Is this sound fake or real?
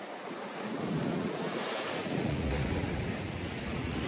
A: fake